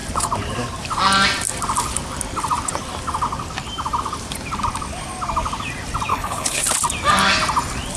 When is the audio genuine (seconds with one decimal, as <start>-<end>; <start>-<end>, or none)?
0.0-6.1; 6.6-8.0